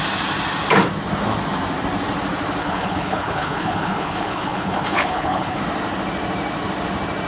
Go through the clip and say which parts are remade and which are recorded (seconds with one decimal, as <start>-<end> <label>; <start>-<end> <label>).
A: 0.0-2.6 recorded; 2.6-5.6 remade; 5.6-7.3 recorded